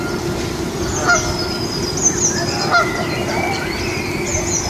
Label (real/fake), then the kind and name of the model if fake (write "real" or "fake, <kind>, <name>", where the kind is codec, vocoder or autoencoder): real